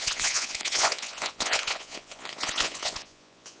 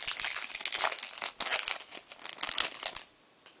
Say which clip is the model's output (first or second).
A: first